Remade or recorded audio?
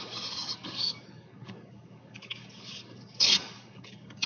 remade